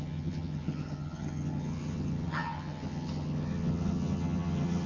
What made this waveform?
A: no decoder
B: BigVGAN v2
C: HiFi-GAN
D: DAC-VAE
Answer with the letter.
C